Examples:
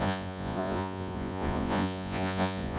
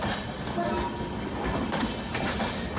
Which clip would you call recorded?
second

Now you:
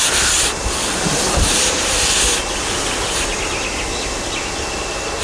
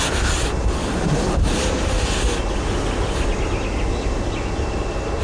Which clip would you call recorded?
second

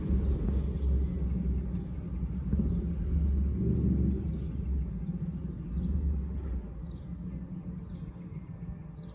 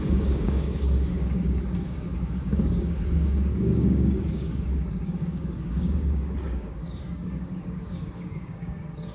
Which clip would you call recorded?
first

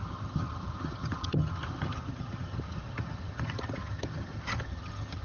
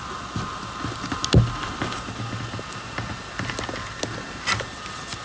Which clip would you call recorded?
second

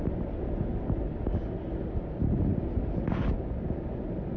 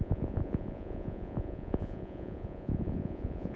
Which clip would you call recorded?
first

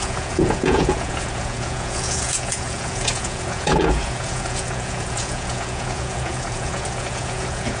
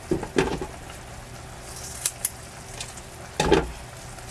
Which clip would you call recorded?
second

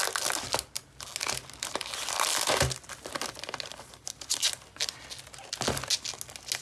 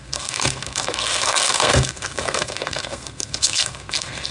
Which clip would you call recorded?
first